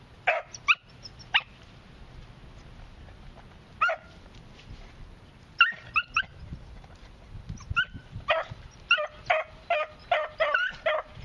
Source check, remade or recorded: recorded